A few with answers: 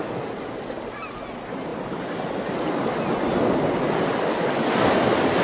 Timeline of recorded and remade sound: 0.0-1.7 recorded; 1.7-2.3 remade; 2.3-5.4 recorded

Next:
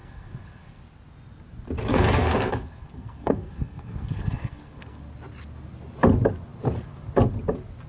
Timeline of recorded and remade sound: 0.0-0.8 remade; 0.8-1.9 recorded; 1.9-5.0 remade; 5.0-7.9 recorded

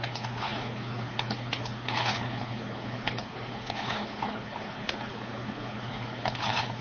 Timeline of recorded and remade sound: 0.0-6.8 remade

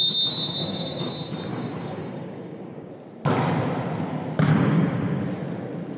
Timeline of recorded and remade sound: 0.0-0.6 recorded; 0.6-1.1 remade; 1.1-1.5 recorded; 1.5-2.9 remade; 2.9-4.5 recorded; 4.5-5.2 remade; 5.2-6.0 recorded

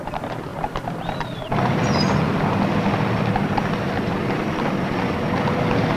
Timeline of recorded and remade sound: 0.0-6.0 recorded

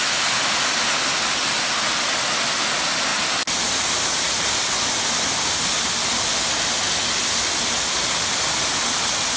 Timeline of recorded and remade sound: 0.0-9.4 recorded

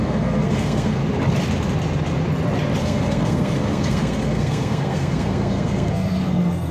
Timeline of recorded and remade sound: 0.0-1.0 remade; 1.0-2.8 recorded; 2.8-6.7 remade

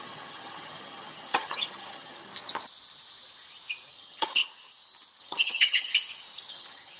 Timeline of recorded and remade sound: 0.0-2.3 remade; 2.3-3.9 recorded; 3.9-4.4 remade; 4.4-5.2 recorded; 5.2-5.9 remade; 5.9-6.5 recorded; 6.5-7.0 remade